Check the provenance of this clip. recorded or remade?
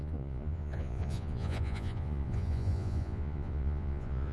remade